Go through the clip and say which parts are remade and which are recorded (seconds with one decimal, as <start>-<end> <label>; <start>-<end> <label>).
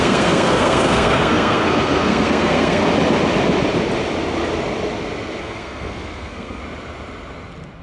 0.0-2.8 remade; 2.8-5.4 recorded; 5.4-6.6 remade; 6.6-7.8 recorded